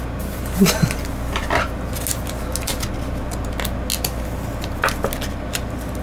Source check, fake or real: real